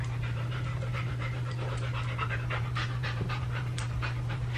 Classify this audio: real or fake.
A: fake